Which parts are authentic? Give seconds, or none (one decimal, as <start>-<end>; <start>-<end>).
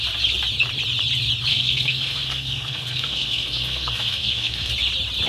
0.0-1.5; 4.7-5.3